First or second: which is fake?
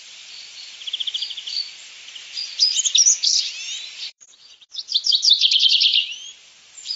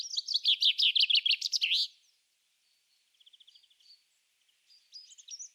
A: first